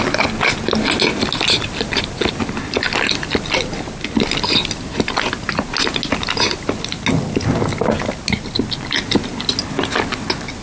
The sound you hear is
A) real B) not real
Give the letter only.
A